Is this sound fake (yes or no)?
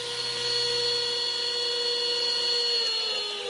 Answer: no